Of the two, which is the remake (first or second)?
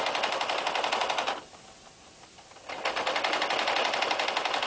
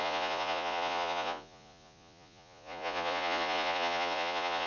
second